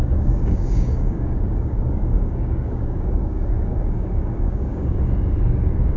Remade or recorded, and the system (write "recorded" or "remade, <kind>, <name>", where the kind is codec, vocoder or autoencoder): remade, codec, DAC